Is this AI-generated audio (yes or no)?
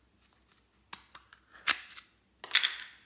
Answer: no